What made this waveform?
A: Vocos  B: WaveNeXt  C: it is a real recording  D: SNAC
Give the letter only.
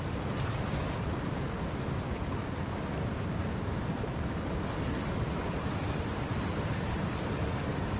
C